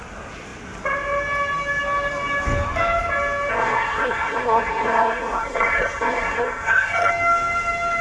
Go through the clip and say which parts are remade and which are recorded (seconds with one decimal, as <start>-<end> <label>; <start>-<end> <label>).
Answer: 0.0-3.5 recorded; 3.5-7.1 remade; 7.1-8.0 recorded